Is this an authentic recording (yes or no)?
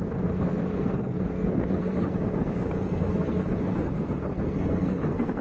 no